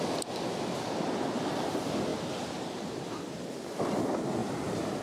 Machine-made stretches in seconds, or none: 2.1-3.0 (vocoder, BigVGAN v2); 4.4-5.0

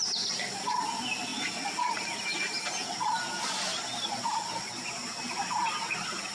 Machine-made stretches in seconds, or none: none

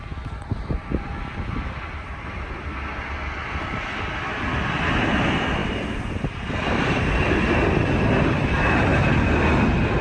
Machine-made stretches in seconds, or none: 0.0-10.0 (vocoder, BigVGAN v2)

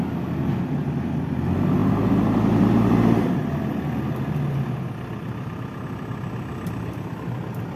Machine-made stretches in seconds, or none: none

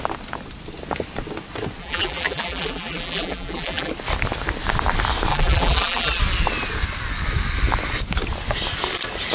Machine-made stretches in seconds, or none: 1.8-3.9 (vocoder, BigVGAN v2); 5.3-6.2

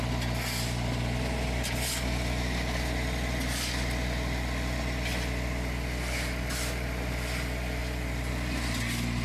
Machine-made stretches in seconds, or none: none

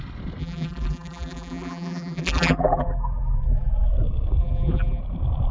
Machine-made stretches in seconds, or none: 0.4-3.7 (vocoder, BigVGAN v2); 4.4-5.0